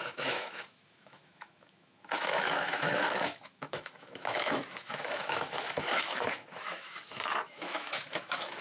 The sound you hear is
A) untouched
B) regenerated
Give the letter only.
B